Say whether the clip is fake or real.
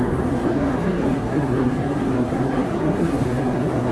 fake